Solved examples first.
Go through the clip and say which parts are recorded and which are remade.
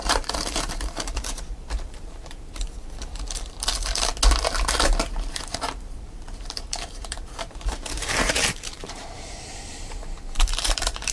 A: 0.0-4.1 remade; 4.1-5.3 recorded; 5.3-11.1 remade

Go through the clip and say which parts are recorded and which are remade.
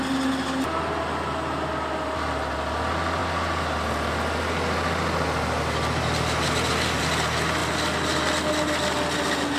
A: 0.0-9.6 recorded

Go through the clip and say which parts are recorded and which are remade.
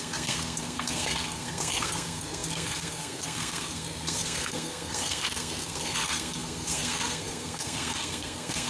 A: 0.0-8.7 remade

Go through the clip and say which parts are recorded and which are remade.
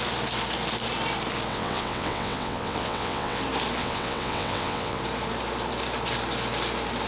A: 0.0-1.5 recorded; 1.5-3.4 remade; 3.4-3.8 recorded; 3.8-5.0 remade; 5.0-7.1 recorded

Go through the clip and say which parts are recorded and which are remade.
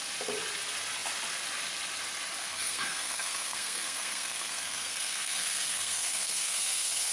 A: 0.0-2.4 recorded; 2.4-7.1 remade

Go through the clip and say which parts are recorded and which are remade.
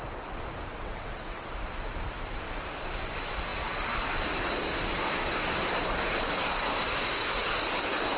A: 0.0-0.7 recorded; 0.7-1.5 remade; 1.5-8.2 recorded